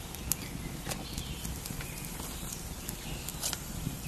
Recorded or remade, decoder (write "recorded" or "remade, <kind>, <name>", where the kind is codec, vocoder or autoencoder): recorded